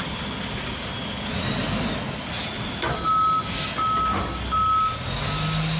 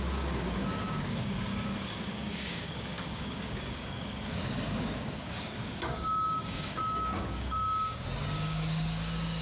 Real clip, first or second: first